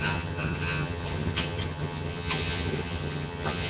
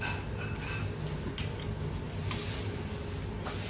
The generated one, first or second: first